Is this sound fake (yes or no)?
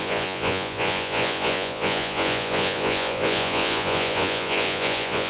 yes